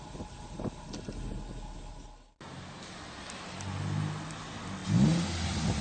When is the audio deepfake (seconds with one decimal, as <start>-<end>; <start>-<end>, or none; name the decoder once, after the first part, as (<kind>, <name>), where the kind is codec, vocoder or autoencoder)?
none